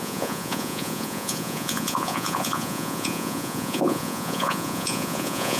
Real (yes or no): no